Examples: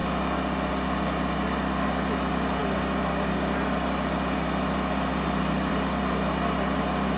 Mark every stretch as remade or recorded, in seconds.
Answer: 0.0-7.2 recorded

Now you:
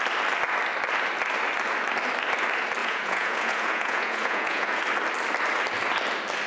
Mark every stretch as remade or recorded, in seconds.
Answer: 0.0-2.8 recorded; 2.8-4.8 remade; 4.8-6.5 recorded

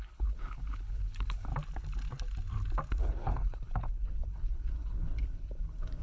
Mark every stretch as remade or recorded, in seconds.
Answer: 0.0-1.5 remade; 1.5-3.0 recorded; 3.0-6.0 remade